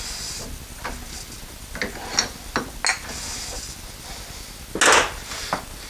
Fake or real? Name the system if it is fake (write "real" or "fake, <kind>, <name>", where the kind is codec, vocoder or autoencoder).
real